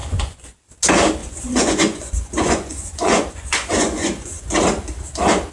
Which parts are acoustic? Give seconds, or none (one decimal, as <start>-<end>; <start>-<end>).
0.6-1.2; 4.5-5.5